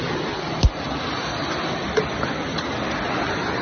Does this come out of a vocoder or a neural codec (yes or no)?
no